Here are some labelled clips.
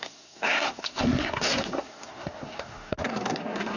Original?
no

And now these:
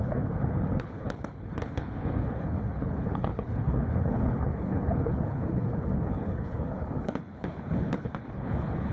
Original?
no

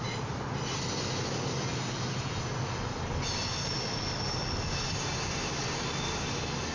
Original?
yes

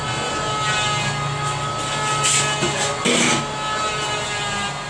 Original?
yes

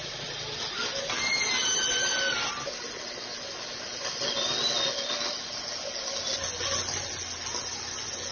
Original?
yes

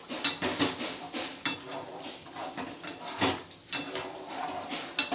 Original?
yes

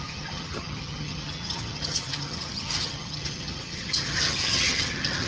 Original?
no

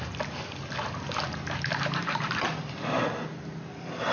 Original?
yes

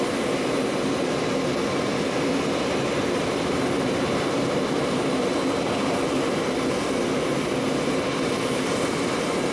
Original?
yes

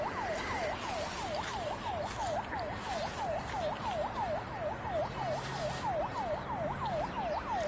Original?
yes